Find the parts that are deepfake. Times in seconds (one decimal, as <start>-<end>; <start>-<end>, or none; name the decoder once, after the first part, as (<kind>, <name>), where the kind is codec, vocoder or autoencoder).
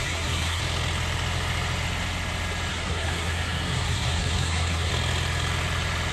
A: 0.0-0.6 (codec, SNAC); 2.7-4.9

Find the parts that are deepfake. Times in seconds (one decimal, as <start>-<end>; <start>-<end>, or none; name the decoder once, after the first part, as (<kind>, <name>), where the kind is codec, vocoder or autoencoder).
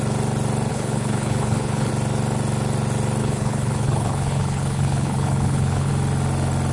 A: 0.7-1.9 (codec, HILCodec); 3.2-5.9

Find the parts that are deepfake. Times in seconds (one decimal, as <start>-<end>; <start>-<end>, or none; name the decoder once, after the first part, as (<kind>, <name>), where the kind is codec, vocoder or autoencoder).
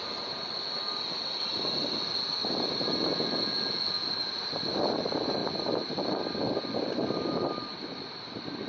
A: 2.4-3.4 (vocoder, BigVGAN v2); 5.4-7.8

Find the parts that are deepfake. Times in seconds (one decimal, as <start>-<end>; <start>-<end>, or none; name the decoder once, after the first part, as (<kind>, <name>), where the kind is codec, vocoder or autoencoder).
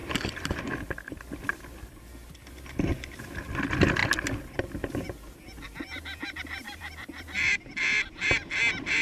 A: none